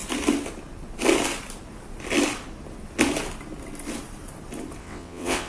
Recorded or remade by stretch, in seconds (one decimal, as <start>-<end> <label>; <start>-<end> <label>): 0.0-4.8 recorded; 4.8-5.5 remade